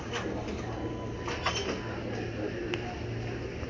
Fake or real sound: real